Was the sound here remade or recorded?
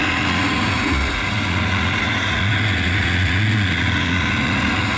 remade